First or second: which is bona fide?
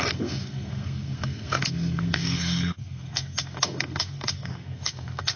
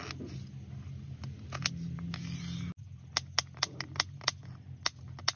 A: second